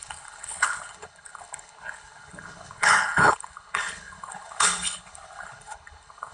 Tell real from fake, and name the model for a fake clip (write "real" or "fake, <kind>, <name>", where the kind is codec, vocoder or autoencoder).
fake, codec, HILCodec